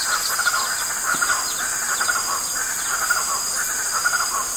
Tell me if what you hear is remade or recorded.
recorded